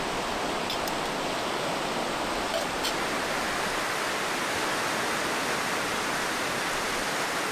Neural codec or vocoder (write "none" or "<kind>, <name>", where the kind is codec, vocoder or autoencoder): none